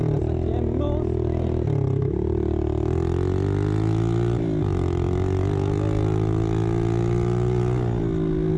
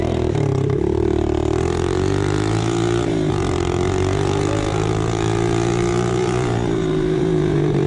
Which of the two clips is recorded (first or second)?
first